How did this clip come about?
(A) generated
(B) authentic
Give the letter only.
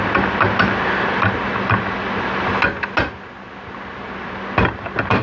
B